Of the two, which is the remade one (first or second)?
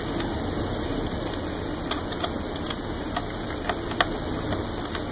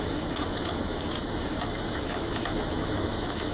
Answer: second